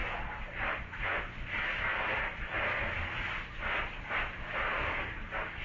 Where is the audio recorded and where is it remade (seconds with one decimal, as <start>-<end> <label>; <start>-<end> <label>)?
0.0-5.6 recorded